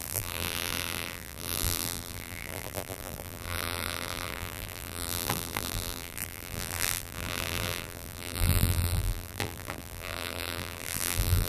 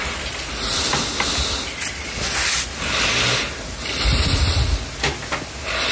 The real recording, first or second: second